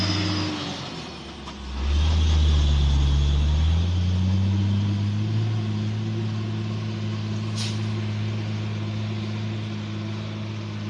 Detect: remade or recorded recorded